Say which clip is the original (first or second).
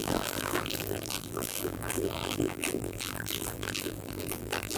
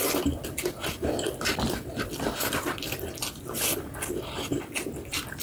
second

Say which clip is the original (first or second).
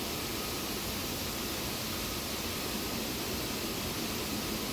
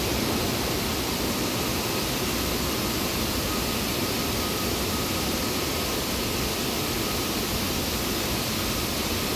first